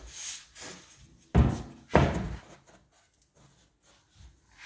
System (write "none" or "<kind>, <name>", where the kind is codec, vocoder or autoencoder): none